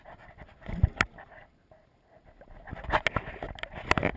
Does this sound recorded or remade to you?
recorded